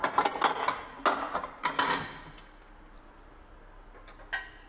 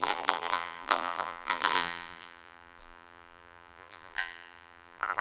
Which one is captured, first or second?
first